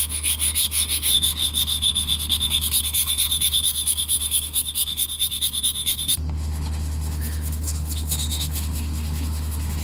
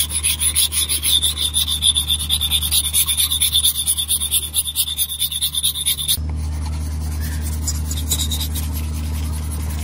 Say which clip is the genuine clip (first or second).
second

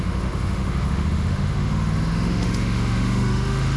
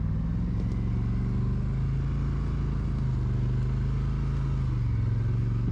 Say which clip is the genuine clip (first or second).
second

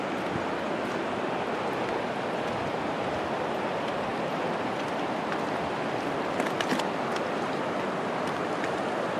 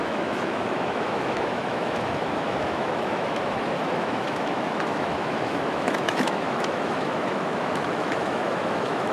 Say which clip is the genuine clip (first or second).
first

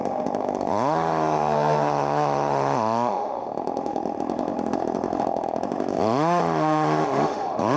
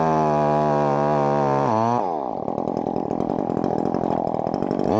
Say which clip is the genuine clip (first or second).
second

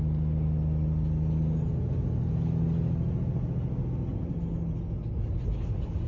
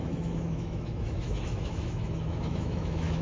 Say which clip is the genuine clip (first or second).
first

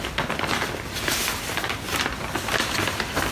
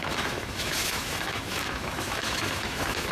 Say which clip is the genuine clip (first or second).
first